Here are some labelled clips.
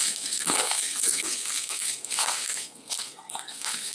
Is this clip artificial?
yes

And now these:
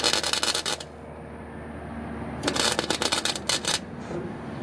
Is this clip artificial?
no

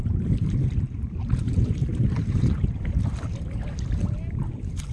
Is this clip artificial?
yes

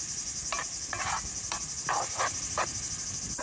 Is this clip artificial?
no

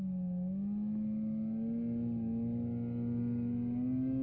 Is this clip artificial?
no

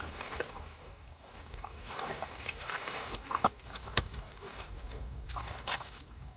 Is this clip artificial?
yes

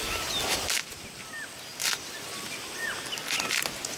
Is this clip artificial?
no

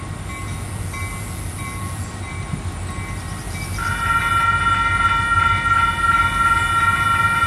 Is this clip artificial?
no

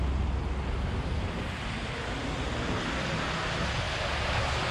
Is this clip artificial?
no